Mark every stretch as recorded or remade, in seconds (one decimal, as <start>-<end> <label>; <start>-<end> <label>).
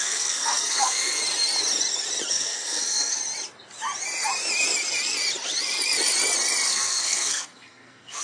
0.0-1.2 remade; 1.2-2.3 recorded; 2.3-3.2 remade; 3.2-6.7 recorded; 6.7-8.2 remade